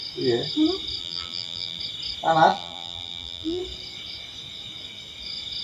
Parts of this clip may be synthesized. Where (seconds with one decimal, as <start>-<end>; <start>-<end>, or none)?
1.0-1.8; 2.5-3.6